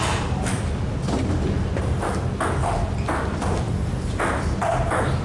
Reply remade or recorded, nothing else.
recorded